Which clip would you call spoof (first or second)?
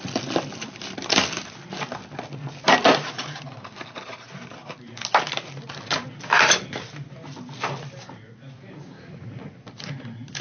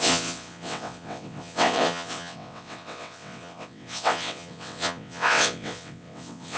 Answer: second